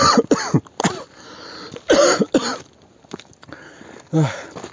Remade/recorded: recorded